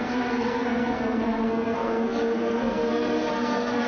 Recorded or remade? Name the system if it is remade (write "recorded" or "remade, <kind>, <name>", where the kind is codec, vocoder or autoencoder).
remade, codec, SNAC